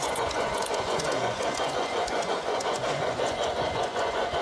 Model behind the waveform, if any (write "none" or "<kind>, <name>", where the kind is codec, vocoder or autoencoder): vocoder, Vocos